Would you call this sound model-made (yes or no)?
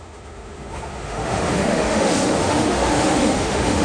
yes